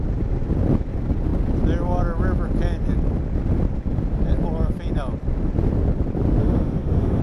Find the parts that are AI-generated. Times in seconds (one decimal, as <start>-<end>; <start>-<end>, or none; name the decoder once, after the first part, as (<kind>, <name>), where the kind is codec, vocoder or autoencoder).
6.4-7.2 (autoencoder, DAC-VAE)